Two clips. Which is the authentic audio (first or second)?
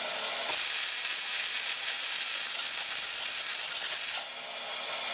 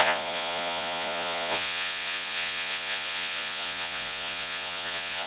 first